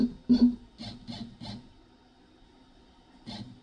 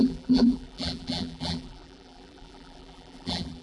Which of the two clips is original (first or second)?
first